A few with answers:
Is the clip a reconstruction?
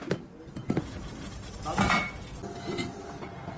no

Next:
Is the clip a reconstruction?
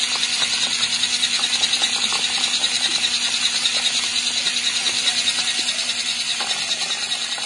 no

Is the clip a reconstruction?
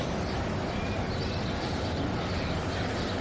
no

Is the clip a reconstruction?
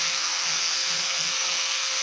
yes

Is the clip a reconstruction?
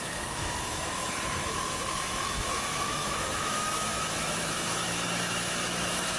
yes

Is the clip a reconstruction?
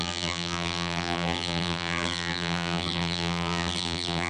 yes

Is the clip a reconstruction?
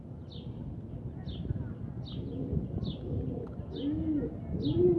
no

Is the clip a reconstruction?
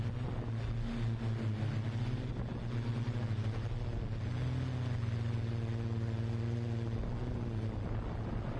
no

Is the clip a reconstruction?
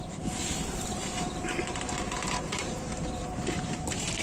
yes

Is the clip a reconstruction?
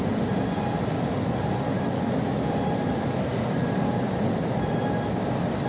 no